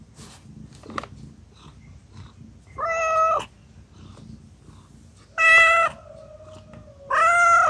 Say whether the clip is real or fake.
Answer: real